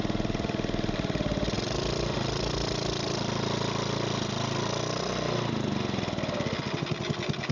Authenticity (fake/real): real